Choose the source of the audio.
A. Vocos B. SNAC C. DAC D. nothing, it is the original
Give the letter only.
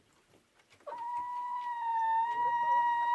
D